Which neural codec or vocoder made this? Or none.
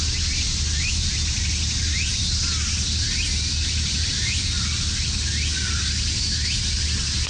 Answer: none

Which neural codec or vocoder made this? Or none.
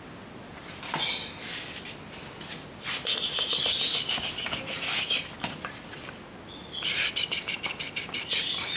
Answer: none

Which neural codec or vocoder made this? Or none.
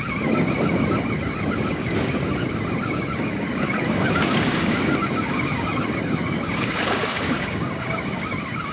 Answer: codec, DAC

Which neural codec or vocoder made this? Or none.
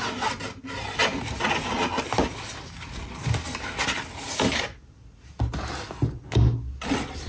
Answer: none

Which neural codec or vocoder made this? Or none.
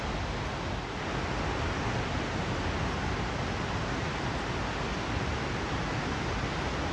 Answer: none